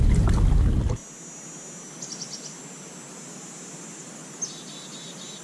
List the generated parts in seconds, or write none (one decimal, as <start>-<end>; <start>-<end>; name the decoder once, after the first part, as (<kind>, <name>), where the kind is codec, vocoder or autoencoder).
none